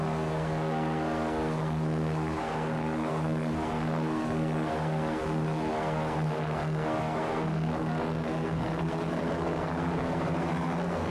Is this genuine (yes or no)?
no